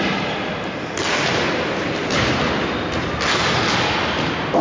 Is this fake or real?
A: real